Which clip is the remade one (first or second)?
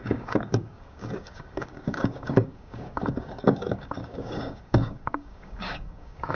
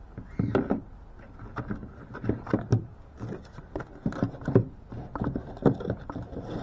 first